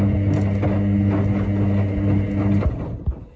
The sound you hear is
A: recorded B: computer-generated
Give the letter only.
A